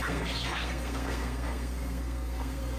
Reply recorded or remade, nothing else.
remade